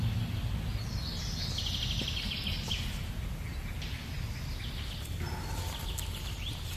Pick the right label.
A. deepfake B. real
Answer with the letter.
B